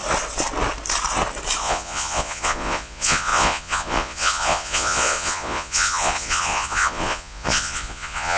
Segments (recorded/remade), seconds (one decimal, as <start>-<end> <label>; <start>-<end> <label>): 0.0-1.6 recorded; 1.6-8.4 remade